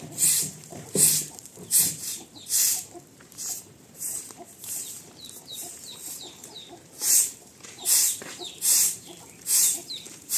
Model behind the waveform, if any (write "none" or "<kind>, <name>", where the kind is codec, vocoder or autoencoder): vocoder, BigVGAN v2